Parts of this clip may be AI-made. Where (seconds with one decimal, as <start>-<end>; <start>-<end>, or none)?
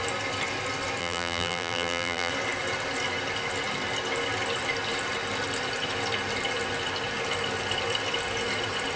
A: 1.0-2.3